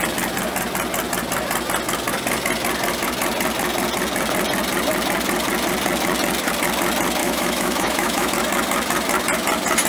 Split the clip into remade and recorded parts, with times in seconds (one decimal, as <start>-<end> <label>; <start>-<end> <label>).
0.0-7.2 recorded; 7.2-8.3 remade; 8.3-9.9 recorded

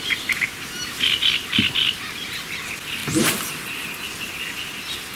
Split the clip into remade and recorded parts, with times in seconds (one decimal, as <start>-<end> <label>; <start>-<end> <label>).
0.0-5.2 recorded

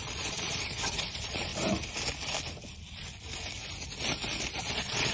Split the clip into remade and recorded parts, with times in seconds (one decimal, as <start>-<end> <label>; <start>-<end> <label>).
0.0-1.5 remade; 1.5-4.6 recorded; 4.6-5.1 remade

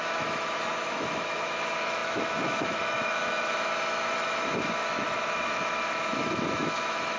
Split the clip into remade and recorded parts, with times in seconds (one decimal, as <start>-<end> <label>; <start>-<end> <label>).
0.0-7.2 remade

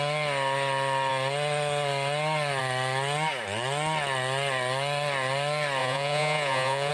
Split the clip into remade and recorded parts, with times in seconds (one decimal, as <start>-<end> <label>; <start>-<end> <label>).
0.0-5.8 recorded; 5.8-6.9 remade

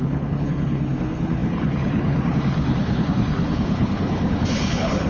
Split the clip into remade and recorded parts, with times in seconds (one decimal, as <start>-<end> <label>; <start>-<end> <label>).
0.0-5.1 remade

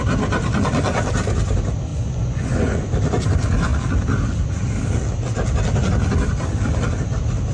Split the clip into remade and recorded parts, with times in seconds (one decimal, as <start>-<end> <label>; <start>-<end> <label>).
0.0-1.9 recorded; 1.9-2.9 remade; 2.9-7.5 recorded